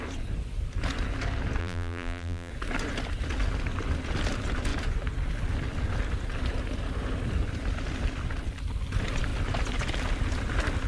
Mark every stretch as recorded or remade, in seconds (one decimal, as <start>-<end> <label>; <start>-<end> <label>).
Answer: 0.0-1.6 recorded; 1.6-2.5 remade; 2.5-10.9 recorded